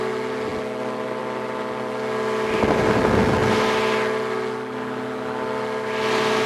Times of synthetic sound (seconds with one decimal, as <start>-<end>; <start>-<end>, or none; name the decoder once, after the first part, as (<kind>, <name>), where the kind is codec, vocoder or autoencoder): none